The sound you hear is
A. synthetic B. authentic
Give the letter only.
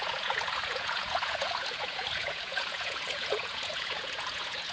A